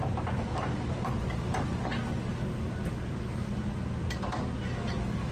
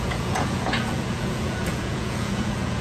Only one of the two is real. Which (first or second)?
first